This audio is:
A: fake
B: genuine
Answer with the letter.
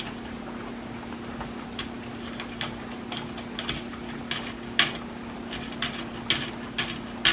B